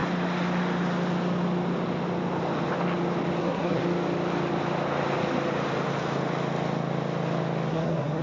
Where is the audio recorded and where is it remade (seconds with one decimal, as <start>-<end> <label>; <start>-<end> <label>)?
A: 0.0-3.4 recorded; 3.4-3.8 remade; 3.8-7.7 recorded; 7.7-8.2 remade